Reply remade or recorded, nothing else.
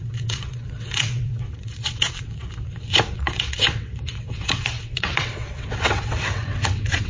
remade